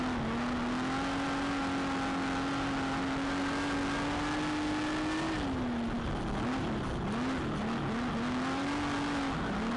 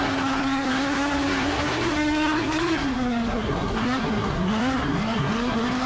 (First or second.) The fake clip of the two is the second